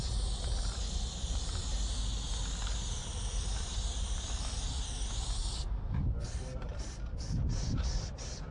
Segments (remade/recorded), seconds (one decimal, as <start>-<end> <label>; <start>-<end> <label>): 0.0-3.0 recorded; 3.0-6.2 remade; 6.2-6.7 recorded; 6.7-8.1 remade; 8.1-8.5 recorded